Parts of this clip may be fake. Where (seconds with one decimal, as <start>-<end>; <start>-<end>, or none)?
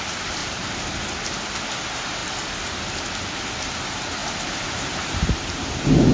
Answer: 0.4-1.0; 4.2-6.1